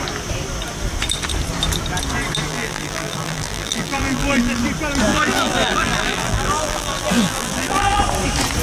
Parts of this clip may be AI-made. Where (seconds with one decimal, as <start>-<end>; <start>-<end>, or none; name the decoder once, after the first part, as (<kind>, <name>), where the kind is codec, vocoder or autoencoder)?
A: 2.5-4.6 (vocoder, BigVGAN v2); 5.1-8.0